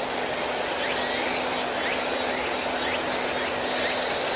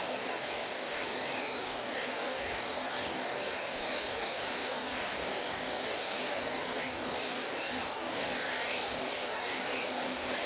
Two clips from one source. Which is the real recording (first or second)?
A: first